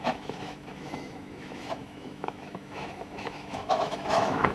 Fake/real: fake